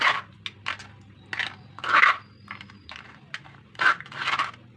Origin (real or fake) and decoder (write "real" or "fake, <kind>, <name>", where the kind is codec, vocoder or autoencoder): real